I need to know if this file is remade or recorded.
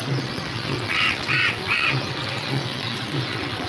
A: remade